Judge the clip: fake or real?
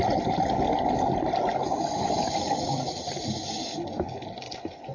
real